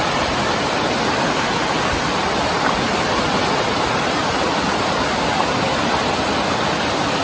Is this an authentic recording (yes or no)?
yes